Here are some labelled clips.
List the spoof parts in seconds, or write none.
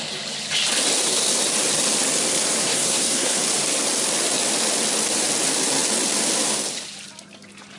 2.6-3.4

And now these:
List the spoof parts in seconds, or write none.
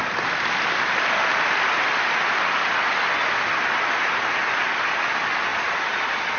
5.5-6.0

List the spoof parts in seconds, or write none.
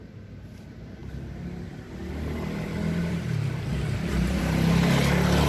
1.0-1.9; 3.0-4.4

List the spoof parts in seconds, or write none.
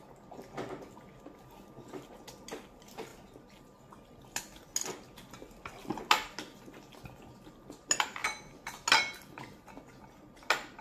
none